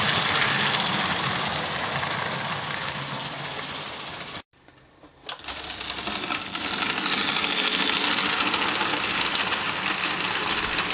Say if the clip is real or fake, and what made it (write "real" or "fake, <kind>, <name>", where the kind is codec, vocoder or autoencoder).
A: real